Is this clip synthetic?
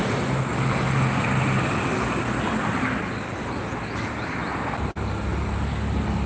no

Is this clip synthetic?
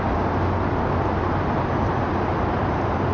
no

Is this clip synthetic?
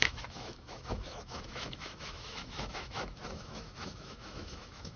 yes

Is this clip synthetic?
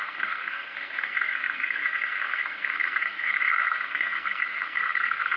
yes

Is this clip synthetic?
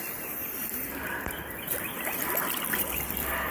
yes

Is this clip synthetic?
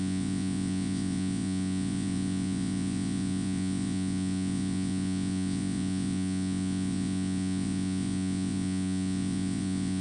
yes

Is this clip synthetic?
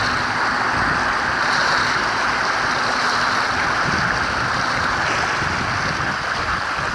no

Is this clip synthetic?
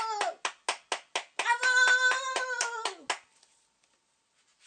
no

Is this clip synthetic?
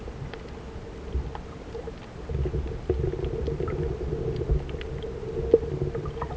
no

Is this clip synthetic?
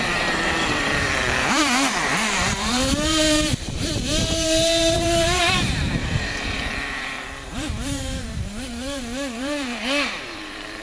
yes